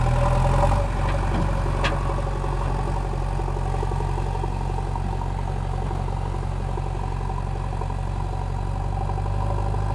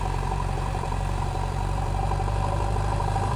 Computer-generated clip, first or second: second